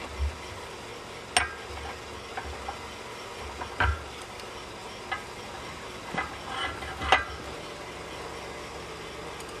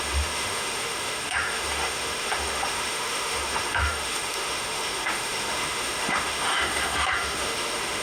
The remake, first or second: second